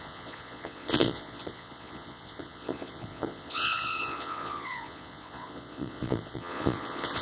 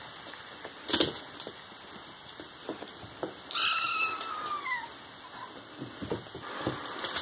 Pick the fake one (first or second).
first